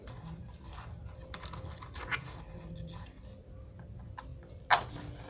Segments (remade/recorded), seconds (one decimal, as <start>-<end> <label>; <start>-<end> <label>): 0.0-5.3 recorded